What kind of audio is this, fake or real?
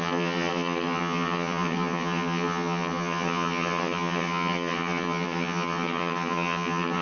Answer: fake